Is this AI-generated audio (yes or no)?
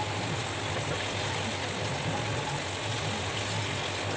no